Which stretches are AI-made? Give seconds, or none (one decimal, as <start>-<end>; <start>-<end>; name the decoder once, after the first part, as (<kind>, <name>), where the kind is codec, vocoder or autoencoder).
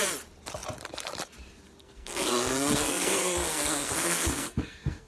1.8-5.1 (codec, SNAC)